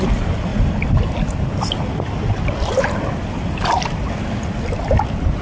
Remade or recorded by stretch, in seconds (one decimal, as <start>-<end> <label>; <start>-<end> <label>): 0.0-5.4 recorded